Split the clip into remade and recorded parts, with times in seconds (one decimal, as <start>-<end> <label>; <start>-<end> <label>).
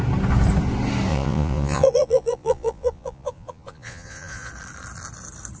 0.0-1.1 recorded; 1.1-4.5 remade; 4.5-5.6 recorded